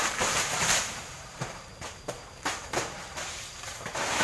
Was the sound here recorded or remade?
remade